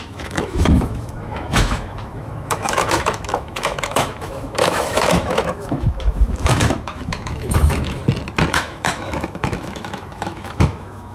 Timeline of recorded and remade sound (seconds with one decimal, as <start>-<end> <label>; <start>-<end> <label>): 0.0-8.0 remade; 8.0-8.5 recorded; 8.5-11.1 remade